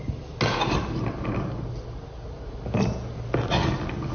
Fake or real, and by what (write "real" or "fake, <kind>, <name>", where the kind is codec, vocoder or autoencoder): real